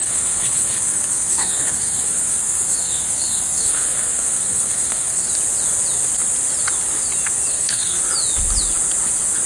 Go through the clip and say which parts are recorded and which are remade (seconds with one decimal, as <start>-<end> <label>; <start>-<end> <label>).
0.0-5.3 remade; 5.3-7.5 recorded; 7.5-8.0 remade; 8.0-9.5 recorded